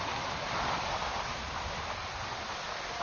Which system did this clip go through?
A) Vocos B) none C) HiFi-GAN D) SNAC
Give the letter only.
B